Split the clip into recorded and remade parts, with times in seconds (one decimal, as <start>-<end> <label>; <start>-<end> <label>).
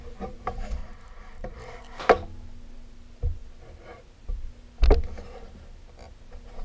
0.0-0.8 recorded; 0.8-1.6 remade; 1.6-6.6 recorded